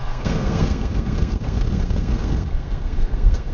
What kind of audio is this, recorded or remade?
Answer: remade